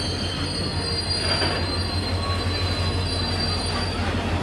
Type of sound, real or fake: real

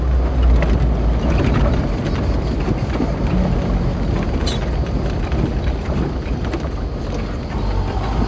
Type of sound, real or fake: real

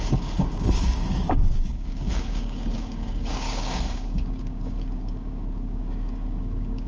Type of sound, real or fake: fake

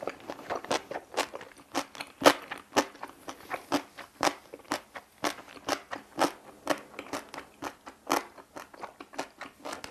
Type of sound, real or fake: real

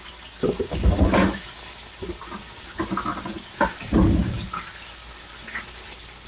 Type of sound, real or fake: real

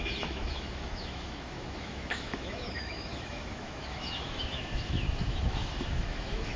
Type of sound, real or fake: fake